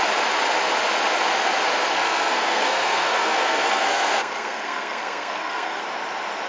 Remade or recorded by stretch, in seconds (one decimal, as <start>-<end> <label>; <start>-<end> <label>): 0.0-1.9 recorded; 1.9-5.8 remade; 5.8-6.5 recorded